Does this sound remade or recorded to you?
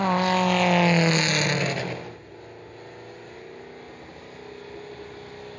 recorded